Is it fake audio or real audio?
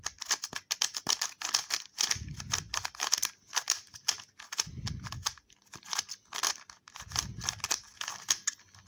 real